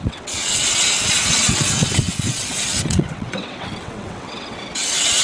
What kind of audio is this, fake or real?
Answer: fake